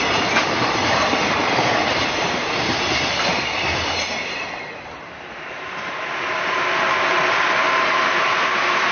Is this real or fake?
fake